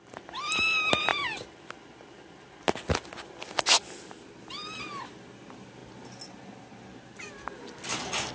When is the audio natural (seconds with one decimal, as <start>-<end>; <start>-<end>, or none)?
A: 0.0-8.3